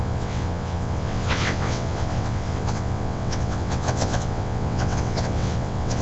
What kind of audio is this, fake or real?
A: fake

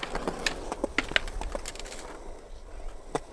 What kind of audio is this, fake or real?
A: real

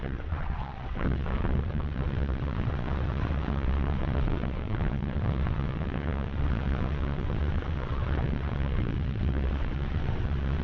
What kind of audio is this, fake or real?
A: fake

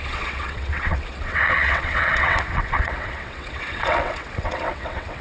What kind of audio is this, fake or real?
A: fake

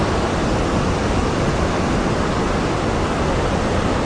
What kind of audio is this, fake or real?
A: real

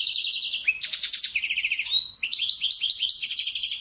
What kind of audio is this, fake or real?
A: real